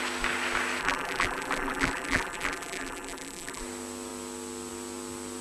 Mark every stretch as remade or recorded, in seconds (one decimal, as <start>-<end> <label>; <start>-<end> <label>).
0.0-0.8 recorded; 0.8-3.6 remade; 3.6-5.4 recorded